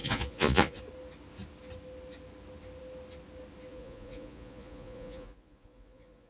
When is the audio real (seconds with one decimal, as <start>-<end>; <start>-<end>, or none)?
0.8-3.7

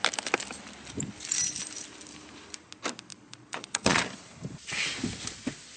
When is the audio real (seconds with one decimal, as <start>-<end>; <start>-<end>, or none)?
0.0-3.1; 4.0-5.8

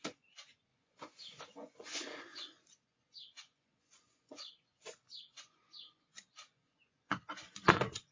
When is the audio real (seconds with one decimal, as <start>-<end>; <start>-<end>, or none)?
none

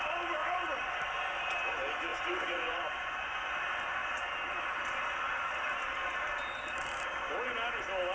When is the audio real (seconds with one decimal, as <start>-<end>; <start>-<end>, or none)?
0.0-0.4; 1.0-2.1; 3.5-8.1